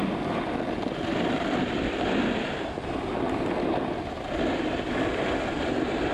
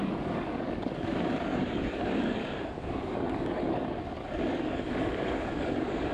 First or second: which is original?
first